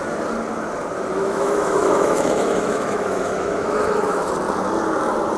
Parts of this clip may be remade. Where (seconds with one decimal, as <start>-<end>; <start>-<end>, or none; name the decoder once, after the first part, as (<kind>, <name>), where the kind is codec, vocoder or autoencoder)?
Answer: 1.2-4.3 (autoencoder, DAC-VAE)

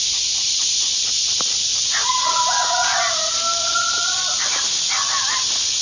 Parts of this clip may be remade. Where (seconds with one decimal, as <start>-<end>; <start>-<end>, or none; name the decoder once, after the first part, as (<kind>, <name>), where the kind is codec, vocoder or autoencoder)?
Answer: 1.7-3.0 (vocoder, Vocos); 3.6-4.2

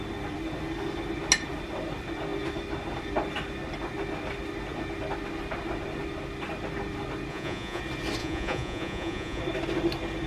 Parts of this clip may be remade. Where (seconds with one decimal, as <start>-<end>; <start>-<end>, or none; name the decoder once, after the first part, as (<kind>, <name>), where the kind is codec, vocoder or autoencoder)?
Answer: 7.3-7.8 (vocoder, Vocos); 8.2-9.4

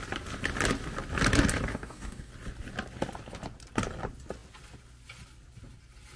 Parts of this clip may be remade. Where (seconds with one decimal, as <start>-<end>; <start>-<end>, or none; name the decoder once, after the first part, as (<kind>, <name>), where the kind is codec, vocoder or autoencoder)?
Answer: 1.7-2.3 (codec, DAC)

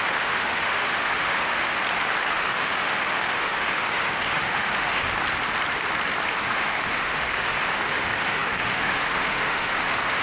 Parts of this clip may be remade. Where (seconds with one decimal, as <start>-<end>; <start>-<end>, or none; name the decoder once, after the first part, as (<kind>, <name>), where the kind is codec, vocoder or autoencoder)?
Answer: 0.0-1.8 (autoencoder, DAC-VAE); 2.3-5.0; 6.4-10.2